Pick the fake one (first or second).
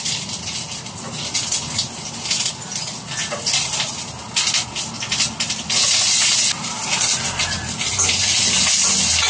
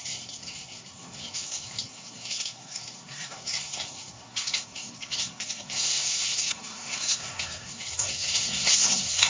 second